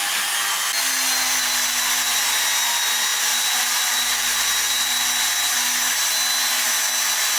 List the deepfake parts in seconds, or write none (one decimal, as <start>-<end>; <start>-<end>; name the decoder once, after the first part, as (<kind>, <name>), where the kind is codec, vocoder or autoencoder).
3.1-4.5 (vocoder, BigVGAN v2)